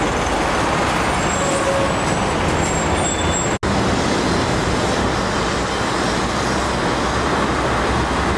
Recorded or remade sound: recorded